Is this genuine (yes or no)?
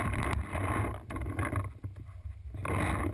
yes